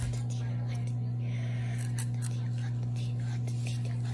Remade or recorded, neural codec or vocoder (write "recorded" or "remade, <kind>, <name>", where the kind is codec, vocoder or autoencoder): recorded